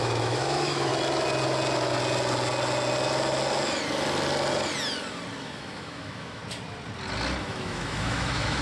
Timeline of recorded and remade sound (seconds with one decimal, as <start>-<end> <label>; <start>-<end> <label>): 0.0-0.9 remade; 0.9-5.4 recorded; 5.4-6.4 remade; 6.4-7.4 recorded; 7.4-8.6 remade